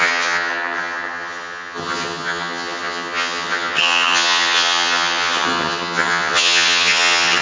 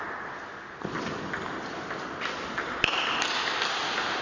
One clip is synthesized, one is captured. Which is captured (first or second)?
second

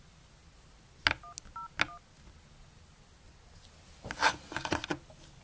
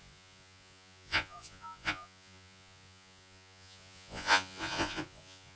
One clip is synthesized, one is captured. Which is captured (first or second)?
first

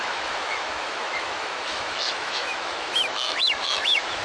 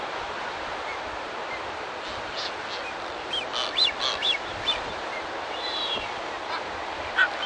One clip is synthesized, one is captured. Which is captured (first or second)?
second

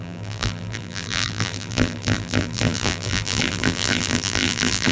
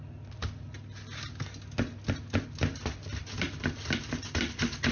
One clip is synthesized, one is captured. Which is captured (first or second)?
second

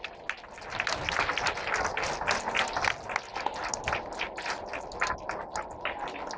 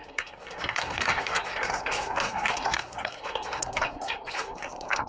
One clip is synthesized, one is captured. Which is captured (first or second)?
first